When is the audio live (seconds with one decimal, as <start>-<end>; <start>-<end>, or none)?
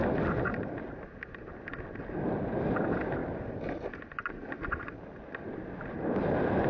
0.0-6.7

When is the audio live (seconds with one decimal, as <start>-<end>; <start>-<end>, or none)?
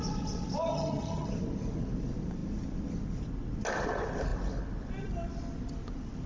0.0-0.7; 1.3-6.3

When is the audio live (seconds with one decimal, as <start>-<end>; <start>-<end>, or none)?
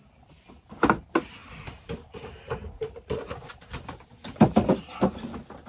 0.0-1.4; 4.8-5.7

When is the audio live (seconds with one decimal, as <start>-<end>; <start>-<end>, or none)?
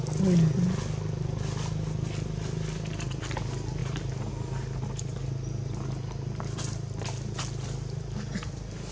0.0-8.9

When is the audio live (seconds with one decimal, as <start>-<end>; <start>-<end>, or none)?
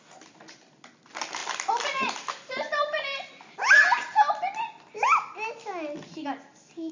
0.0-1.4; 3.6-6.9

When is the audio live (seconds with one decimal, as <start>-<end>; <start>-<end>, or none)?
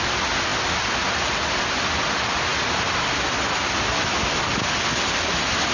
0.0-5.7